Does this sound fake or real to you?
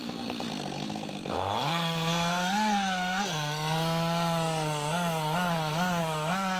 fake